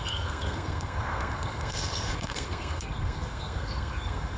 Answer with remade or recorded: remade